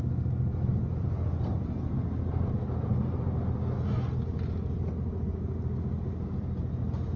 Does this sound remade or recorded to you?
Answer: recorded